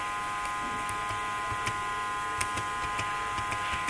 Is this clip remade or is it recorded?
recorded